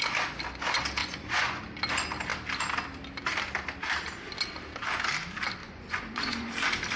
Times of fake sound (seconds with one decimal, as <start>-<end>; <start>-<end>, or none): 1.0-1.6; 5.6-6.5